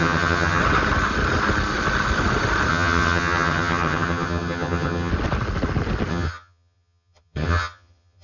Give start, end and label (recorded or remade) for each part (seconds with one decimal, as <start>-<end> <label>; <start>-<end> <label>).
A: 0.0-0.6 remade; 0.6-2.7 recorded; 2.7-5.1 remade; 5.1-6.1 recorded; 6.1-8.2 remade